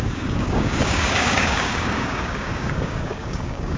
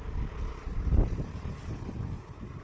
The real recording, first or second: second